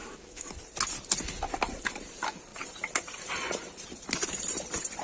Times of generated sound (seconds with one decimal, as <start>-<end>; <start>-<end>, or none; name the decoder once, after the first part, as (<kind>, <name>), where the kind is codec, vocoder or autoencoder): 0.0-0.5 (autoencoder, DAC-VAE)